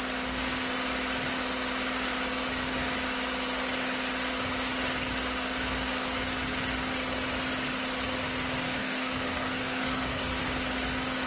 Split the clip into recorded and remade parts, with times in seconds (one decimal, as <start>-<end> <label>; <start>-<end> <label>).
0.0-8.8 recorded; 8.8-10.2 remade; 10.2-11.3 recorded